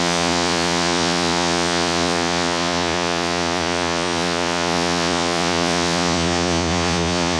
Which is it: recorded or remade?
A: remade